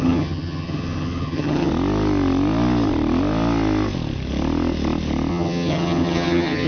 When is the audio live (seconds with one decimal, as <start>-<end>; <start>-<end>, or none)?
1.7-5.3